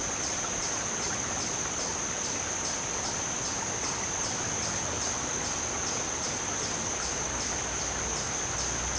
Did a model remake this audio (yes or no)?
no